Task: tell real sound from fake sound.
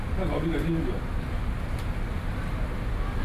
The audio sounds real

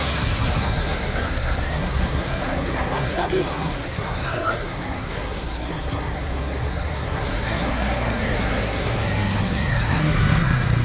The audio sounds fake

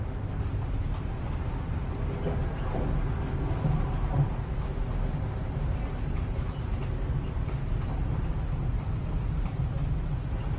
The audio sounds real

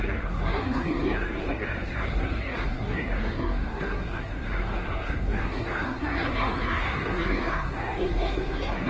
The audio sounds fake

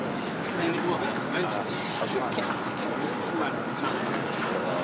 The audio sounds real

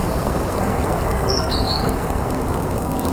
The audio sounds fake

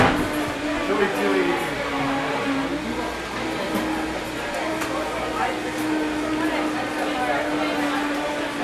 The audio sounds real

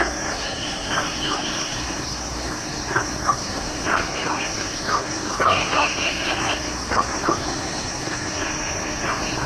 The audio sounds fake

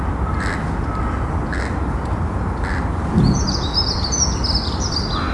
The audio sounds real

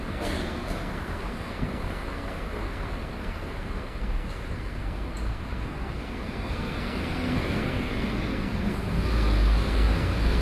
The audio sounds fake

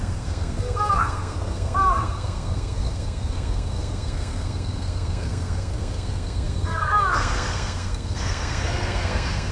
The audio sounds fake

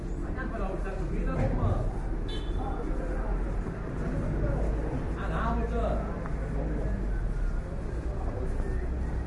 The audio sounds real